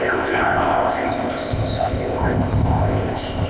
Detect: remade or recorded remade